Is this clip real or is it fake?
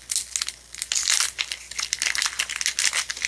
real